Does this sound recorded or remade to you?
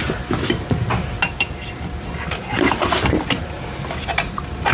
recorded